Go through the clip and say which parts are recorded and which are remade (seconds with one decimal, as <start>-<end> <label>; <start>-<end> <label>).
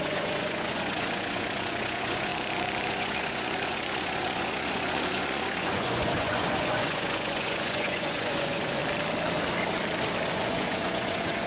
0.0-2.3 remade; 2.3-2.9 recorded; 2.9-8.8 remade; 8.8-10.3 recorded; 10.3-11.5 remade